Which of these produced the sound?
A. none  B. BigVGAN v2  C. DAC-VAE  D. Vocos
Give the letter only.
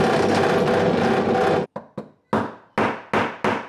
A